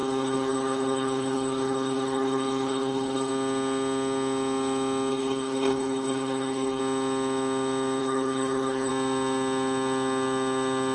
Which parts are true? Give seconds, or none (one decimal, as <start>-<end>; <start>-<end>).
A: 3.3-5.1; 6.8-8.0; 8.9-10.9

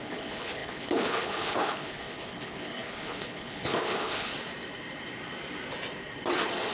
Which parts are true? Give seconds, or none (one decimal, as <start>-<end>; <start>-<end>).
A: 4.3-6.7

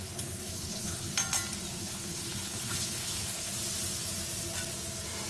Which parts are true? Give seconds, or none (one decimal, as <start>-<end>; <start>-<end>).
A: 1.1-1.8; 3.5-5.3

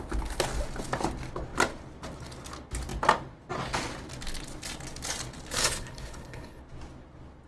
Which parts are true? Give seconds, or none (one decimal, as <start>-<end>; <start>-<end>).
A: 0.0-5.6; 6.6-7.5